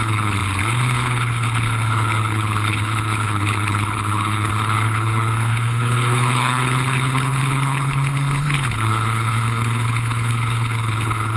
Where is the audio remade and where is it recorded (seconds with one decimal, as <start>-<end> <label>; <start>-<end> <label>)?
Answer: 0.0-11.4 remade